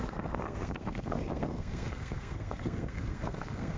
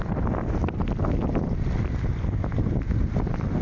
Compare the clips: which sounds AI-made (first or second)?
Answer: first